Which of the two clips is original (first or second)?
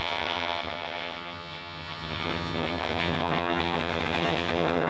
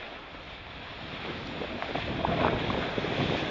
second